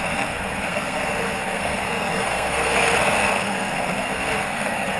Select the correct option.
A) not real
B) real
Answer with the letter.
A